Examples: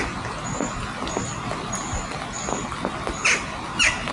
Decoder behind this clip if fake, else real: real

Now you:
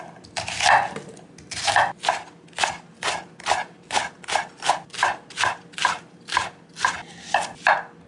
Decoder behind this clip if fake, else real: real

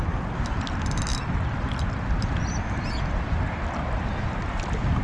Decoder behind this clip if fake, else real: real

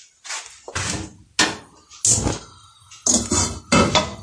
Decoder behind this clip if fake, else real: real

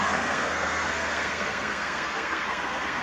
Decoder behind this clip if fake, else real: fake, codec, SNAC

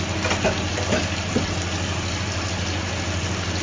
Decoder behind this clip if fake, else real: real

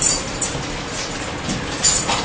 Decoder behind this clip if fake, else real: real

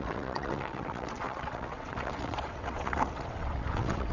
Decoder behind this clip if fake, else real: fake, vocoder, WaveNeXt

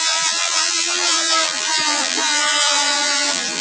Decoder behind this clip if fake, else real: fake, vocoder, BigVGAN v2